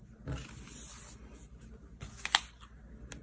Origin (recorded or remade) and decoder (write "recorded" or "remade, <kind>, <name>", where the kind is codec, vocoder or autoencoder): recorded